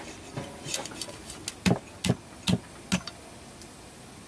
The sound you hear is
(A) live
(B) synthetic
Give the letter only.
A